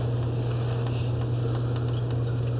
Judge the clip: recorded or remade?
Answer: recorded